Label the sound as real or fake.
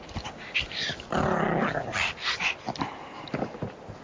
real